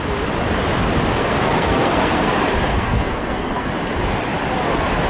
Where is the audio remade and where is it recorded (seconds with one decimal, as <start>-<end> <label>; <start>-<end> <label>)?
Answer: 0.0-1.1 recorded; 1.1-2.3 remade; 2.3-2.7 recorded; 2.7-3.7 remade; 3.7-5.1 recorded